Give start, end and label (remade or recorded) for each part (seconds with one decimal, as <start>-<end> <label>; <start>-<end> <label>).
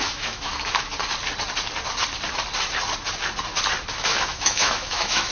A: 0.0-0.9 remade; 0.9-3.9 recorded; 3.9-5.3 remade